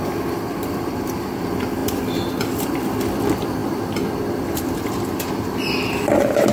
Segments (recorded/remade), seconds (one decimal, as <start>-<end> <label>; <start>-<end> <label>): 0.0-6.5 recorded